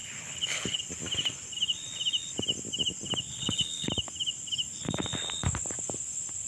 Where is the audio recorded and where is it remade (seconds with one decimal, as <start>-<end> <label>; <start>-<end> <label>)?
0.0-0.8 remade; 0.8-3.3 recorded; 3.3-3.9 remade; 3.9-6.5 recorded